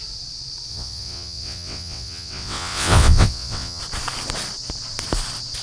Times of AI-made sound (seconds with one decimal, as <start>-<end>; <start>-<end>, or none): 0.7-3.8